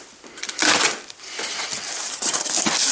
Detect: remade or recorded recorded